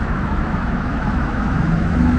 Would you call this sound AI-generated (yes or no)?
yes